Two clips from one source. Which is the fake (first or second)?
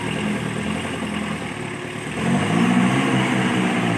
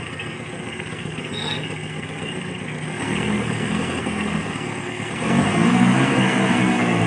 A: second